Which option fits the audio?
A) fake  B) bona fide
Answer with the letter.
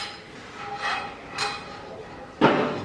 B